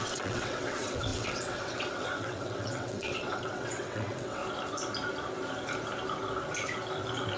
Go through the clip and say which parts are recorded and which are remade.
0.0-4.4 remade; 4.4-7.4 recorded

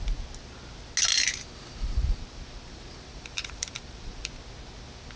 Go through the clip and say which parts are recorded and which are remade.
0.0-1.1 recorded; 1.1-4.2 remade; 4.2-5.2 recorded